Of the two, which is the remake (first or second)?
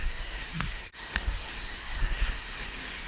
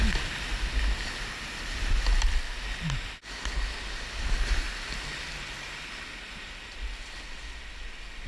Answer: first